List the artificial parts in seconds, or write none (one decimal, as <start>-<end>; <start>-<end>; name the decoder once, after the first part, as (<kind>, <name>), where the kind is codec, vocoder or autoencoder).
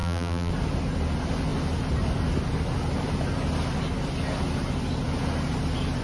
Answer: 0.0-0.5 (vocoder, BigVGAN v2)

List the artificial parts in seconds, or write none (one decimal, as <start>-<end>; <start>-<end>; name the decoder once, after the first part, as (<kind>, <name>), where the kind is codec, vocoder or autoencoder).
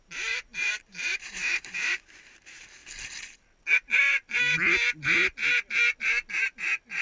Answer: 0.0-2.8 (vocoder, BigVGAN v2)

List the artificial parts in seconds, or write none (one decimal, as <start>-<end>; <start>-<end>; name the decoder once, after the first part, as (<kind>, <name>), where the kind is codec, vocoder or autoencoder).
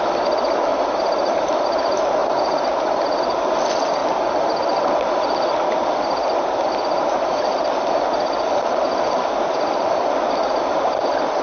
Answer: 0.7-1.5 (vocoder, BigVGAN v2); 2.2-3.2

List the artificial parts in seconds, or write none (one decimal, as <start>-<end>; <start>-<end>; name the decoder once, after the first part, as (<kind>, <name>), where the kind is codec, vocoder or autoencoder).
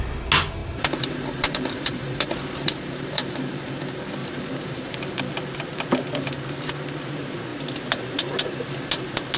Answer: 0.6-3.7 (vocoder, BigVGAN v2); 4.2-5.2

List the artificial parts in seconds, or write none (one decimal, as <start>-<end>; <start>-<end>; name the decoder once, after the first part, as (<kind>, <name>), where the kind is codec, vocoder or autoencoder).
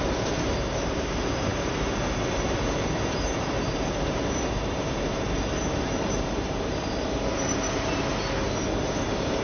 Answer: 0.0-8.1 (vocoder, BigVGAN v2); 8.8-9.4